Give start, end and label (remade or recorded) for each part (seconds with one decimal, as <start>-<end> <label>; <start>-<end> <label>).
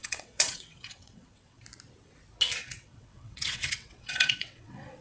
0.0-1.6 remade; 1.6-2.6 recorded; 2.6-5.0 remade